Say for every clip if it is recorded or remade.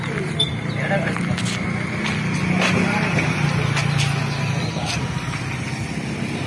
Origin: recorded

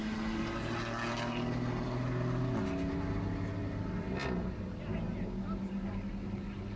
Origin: recorded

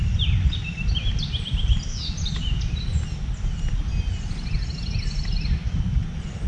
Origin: recorded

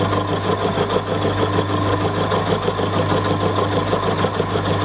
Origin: recorded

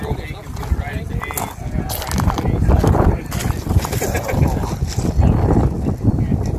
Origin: recorded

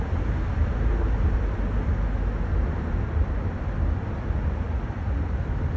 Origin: recorded